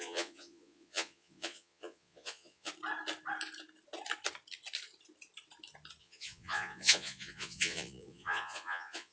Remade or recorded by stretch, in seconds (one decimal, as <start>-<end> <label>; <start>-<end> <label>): 0.0-2.7 remade; 2.7-6.0 recorded; 6.0-9.1 remade